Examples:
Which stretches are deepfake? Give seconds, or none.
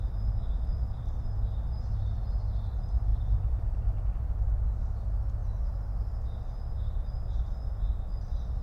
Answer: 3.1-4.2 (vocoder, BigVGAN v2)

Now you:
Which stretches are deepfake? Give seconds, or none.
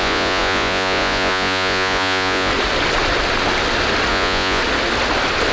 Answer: 0.0-2.5 (vocoder, Vocos); 4.1-4.6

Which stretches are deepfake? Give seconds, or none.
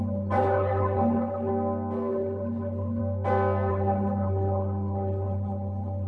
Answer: 0.0-1.5 (codec, HILCodec); 2.1-3.0; 3.7-6.1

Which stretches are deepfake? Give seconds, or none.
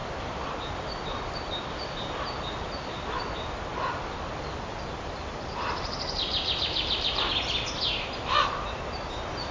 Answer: 0.0-3.2 (vocoder, BigVGAN v2); 3.7-5.8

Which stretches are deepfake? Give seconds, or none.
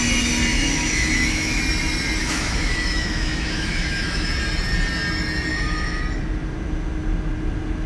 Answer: 0.5-1.6 (autoencoder, DAC-VAE); 2.2-4.3; 5.5-6.0